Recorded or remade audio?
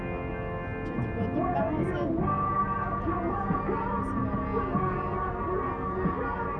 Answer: recorded